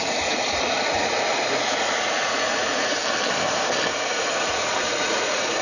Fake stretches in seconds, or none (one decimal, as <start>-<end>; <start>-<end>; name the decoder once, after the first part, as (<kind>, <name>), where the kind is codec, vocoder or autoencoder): 0.0-3.0 (vocoder, Vocos); 3.9-5.6